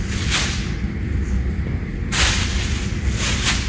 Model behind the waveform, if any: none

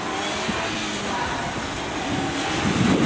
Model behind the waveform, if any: none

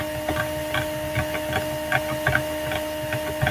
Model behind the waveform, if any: none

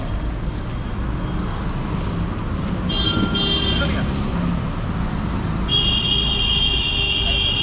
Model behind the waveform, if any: none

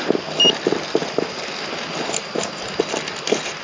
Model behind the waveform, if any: none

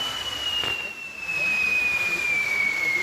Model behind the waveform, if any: none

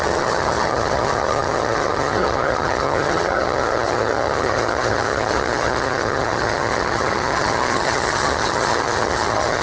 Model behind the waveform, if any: vocoder, HiFi-GAN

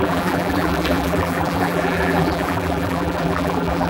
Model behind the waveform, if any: vocoder, BigVGAN v2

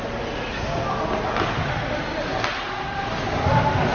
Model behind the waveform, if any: none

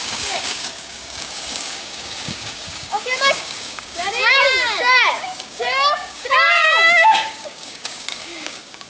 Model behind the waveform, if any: codec, DAC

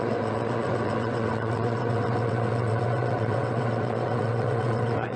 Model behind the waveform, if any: vocoder, WaveNeXt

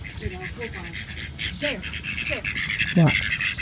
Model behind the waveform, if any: none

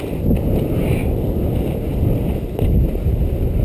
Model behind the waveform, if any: none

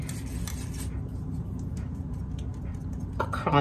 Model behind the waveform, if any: none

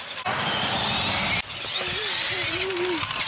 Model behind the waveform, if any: none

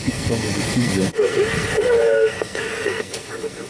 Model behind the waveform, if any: codec, SNAC